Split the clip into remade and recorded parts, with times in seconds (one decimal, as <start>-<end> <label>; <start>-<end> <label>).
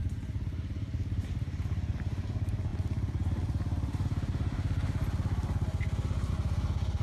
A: 0.0-7.0 recorded